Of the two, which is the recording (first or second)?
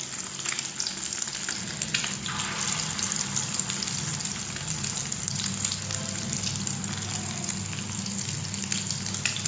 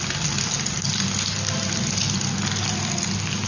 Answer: first